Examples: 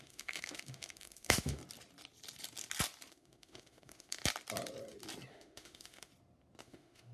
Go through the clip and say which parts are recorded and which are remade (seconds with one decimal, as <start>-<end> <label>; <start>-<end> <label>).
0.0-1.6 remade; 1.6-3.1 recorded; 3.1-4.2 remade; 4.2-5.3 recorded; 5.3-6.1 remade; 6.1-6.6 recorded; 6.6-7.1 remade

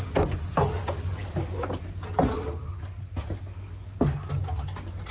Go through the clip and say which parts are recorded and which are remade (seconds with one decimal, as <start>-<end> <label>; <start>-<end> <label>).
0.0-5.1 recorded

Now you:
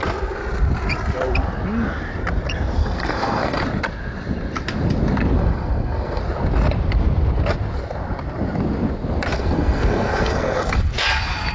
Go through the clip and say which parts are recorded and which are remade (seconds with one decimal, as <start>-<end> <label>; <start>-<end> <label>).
0.0-2.8 recorded; 2.8-3.6 remade; 3.6-5.4 recorded; 5.4-6.2 remade; 6.2-9.3 recorded; 9.3-11.0 remade; 11.0-11.5 recorded